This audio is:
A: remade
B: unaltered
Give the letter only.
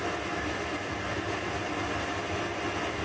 B